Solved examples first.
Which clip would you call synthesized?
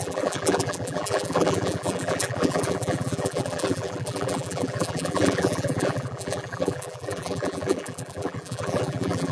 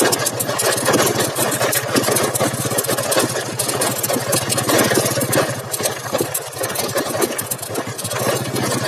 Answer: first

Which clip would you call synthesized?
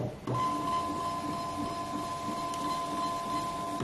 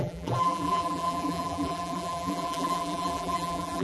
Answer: second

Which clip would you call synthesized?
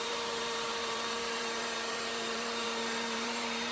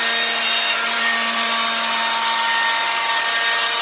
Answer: first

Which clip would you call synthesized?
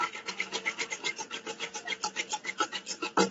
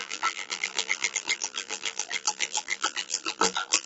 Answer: second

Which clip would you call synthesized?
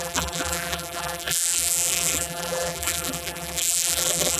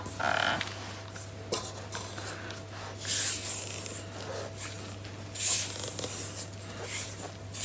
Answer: first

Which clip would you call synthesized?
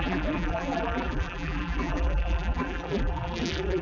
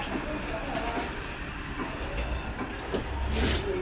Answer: first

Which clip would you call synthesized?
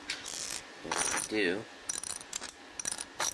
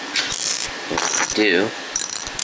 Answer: second